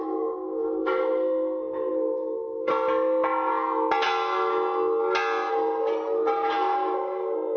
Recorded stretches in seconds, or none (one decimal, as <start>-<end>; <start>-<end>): 2.7-5.5